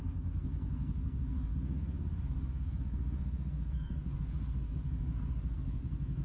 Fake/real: fake